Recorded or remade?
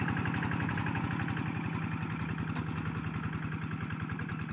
recorded